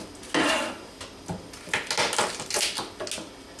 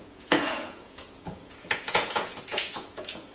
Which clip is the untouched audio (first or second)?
first